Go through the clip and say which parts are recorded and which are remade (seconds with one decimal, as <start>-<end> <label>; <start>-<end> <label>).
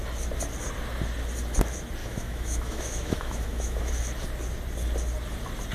0.0-2.0 recorded; 2.0-3.9 remade; 3.9-5.7 recorded